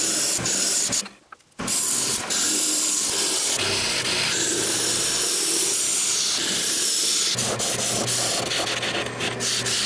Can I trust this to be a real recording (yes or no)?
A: yes